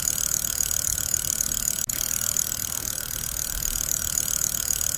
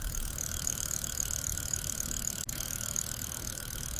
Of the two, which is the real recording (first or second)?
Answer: first